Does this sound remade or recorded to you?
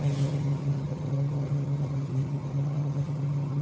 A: remade